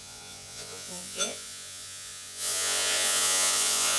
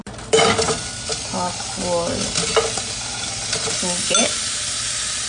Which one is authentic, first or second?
second